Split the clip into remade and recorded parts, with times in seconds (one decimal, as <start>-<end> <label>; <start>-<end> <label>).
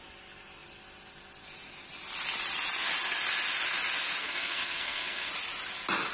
0.0-4.2 recorded; 4.2-5.3 remade; 5.3-6.1 recorded